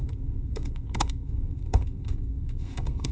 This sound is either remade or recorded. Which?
remade